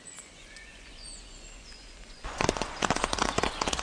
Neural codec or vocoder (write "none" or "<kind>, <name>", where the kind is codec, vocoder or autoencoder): vocoder, Vocos